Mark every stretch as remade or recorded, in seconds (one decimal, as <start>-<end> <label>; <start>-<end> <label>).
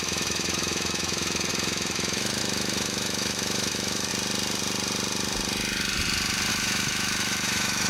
0.0-4.1 remade; 4.1-6.5 recorded; 6.5-7.9 remade